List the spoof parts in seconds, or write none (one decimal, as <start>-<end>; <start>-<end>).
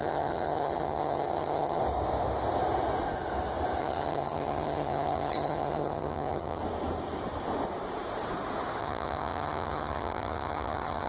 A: 0.0-1.8; 3.8-6.6; 8.8-11.1